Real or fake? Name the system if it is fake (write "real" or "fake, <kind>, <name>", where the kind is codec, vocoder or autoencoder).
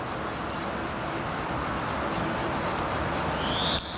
real